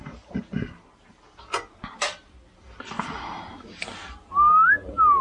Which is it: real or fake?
real